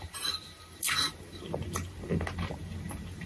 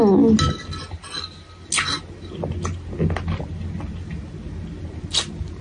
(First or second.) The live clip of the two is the second